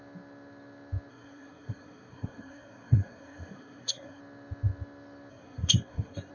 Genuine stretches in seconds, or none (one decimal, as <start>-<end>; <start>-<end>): 0.0-1.1; 4.2-5.3